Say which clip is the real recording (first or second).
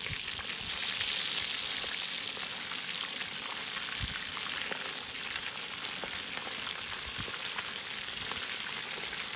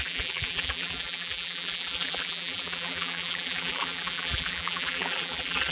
first